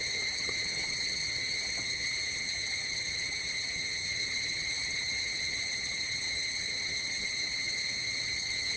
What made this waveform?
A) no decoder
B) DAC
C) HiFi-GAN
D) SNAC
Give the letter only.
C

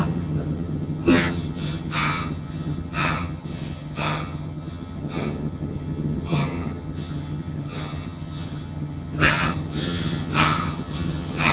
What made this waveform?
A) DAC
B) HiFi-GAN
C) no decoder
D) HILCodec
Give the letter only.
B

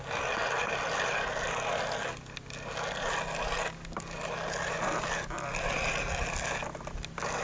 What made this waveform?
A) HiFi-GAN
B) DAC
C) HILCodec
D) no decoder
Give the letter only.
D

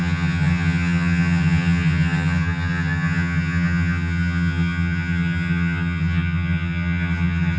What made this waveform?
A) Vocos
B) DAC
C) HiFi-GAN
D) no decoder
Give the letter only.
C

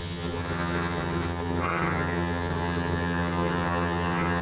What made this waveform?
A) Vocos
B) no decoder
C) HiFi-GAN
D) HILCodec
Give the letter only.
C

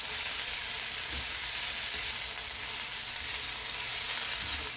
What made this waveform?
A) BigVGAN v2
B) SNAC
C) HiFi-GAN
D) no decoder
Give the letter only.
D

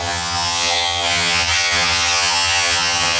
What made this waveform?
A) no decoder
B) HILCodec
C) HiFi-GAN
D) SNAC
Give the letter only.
C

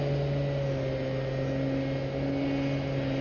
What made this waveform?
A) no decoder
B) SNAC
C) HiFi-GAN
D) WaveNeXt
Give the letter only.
A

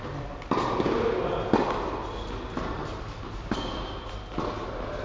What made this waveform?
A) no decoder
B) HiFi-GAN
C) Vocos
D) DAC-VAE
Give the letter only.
A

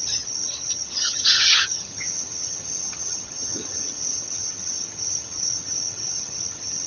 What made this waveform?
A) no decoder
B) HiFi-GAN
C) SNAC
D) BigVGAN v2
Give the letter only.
B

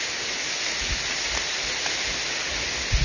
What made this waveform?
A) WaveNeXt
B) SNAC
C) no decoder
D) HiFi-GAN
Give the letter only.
C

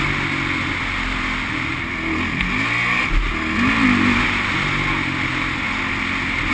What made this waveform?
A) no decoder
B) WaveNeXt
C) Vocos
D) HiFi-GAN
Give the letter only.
A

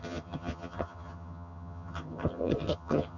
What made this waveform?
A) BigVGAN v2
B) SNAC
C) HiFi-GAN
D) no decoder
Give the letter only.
C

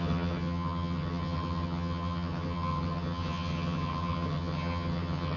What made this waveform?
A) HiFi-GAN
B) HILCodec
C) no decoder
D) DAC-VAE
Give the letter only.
A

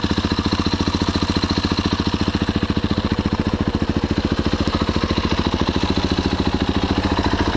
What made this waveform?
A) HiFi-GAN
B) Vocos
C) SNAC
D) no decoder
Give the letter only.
D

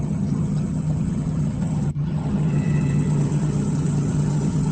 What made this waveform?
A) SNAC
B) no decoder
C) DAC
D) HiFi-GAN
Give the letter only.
D